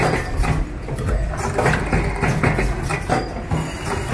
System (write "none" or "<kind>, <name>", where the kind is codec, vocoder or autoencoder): none